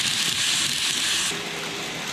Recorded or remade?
recorded